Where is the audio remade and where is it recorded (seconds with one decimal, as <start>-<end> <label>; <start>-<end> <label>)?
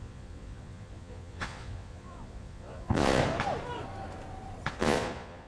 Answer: 0.0-3.2 remade; 3.2-4.7 recorded; 4.7-5.5 remade